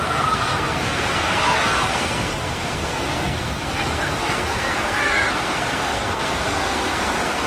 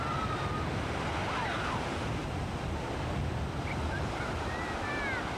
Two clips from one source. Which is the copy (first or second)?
first